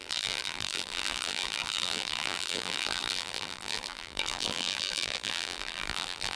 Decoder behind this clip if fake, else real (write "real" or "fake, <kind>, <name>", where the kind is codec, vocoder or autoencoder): fake, vocoder, BigVGAN v2